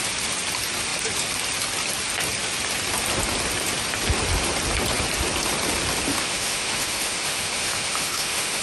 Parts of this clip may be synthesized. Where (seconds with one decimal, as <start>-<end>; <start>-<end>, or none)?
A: 6.1-8.6